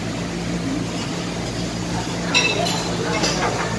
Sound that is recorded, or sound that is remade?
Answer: recorded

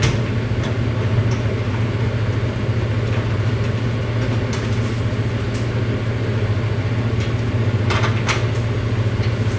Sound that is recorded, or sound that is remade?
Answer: recorded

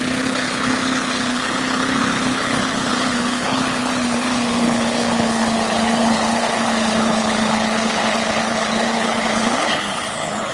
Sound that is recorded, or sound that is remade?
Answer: remade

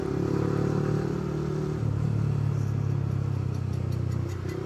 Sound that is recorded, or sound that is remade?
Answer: recorded